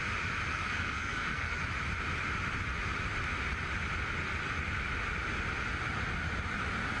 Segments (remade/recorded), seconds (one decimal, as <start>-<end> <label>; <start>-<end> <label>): 0.0-0.5 recorded; 0.5-1.6 remade; 1.6-7.0 recorded